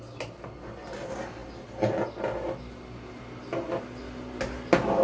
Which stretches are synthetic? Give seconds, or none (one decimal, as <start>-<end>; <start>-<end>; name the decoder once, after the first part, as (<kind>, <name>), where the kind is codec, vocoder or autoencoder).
none